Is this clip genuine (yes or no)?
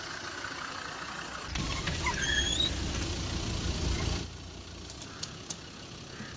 yes